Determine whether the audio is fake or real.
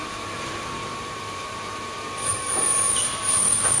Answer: fake